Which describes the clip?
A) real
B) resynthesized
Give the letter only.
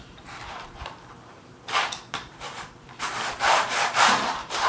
B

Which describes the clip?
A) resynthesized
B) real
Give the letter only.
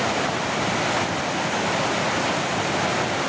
B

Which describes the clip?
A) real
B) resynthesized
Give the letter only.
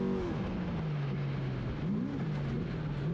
A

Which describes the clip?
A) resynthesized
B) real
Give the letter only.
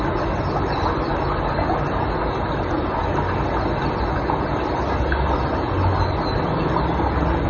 B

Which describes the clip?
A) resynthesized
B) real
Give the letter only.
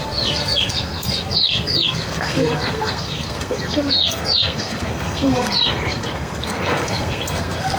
A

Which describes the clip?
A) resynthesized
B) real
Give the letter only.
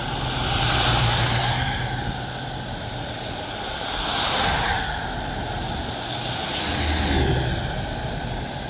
B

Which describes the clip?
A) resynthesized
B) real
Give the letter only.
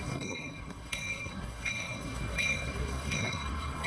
A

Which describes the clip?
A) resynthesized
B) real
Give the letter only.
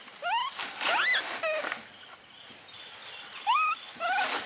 B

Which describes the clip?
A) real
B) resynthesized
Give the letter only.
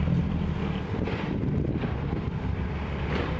B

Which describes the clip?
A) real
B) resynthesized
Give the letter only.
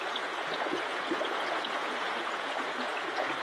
B